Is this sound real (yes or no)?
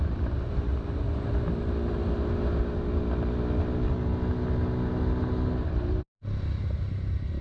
yes